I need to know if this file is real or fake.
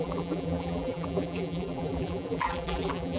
fake